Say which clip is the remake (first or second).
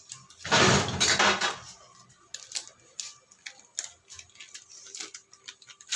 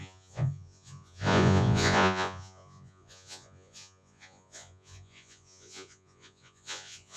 second